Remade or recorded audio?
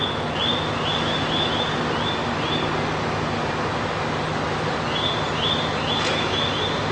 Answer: recorded